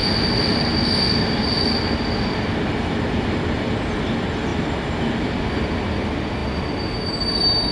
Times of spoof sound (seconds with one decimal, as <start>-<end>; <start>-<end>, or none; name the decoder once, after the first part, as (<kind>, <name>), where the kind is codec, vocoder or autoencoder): none